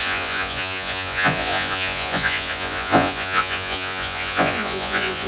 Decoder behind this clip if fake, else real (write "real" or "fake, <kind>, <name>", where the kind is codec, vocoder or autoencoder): fake, vocoder, Vocos